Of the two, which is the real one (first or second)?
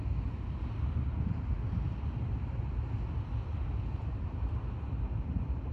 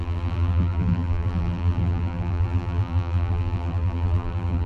first